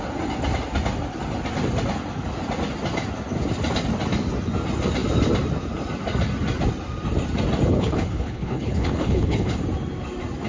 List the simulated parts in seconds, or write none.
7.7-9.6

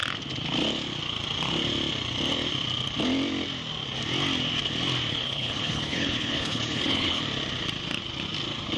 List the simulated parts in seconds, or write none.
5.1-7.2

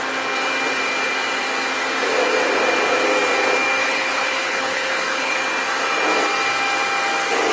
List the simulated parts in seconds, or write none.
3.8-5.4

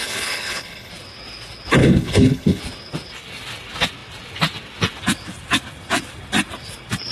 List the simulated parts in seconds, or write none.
0.0-0.9; 1.8-2.6

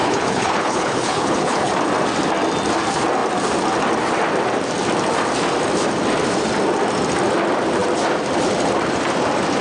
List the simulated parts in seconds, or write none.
0.0-1.7

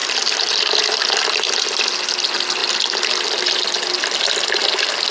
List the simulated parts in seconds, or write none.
none

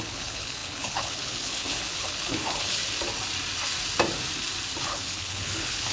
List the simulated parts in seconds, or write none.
0.0-2.8; 4.8-5.9

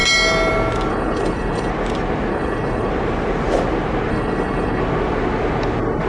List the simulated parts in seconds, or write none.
0.9-1.7; 2.3-2.9; 4.1-4.8